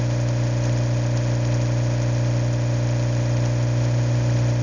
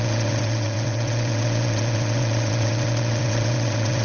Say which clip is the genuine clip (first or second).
first